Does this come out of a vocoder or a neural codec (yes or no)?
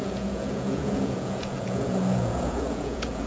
yes